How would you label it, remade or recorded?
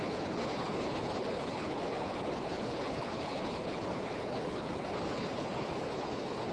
remade